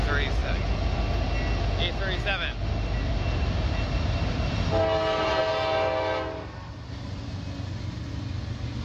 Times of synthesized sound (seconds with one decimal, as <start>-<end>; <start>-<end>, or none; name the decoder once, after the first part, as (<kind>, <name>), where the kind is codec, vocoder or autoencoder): none